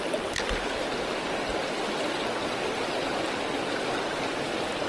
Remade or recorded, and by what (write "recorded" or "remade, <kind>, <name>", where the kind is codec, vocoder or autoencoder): recorded